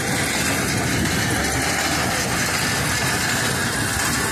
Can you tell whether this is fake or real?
real